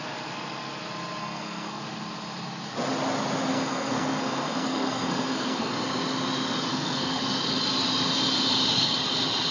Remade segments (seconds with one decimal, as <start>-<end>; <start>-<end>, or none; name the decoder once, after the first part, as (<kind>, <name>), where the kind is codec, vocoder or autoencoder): 1.2-1.8 (codec, SNAC); 3.5-5.7; 6.7-7.2